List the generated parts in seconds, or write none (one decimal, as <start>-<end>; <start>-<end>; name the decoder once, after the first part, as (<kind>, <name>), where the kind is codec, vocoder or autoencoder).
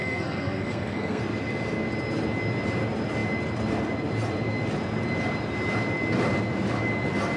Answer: 0.0-1.2 (codec, SNAC)